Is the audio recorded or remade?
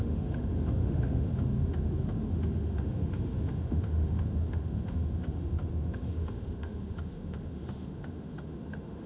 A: remade